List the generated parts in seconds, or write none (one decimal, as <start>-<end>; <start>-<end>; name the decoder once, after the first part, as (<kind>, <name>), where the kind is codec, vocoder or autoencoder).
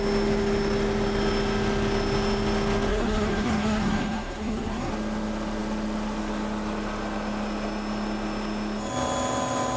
2.9-4.9 (codec, SNAC)